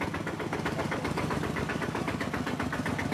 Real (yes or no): no